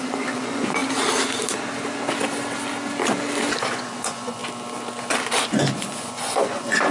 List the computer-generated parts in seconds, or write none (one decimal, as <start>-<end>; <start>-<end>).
0.0-0.8; 3.6-4.4; 5.4-6.9